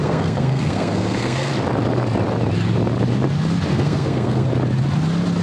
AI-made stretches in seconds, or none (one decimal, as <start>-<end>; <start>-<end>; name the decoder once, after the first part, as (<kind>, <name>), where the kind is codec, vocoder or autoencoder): 0.0-1.5 (codec, SNAC); 3.7-4.5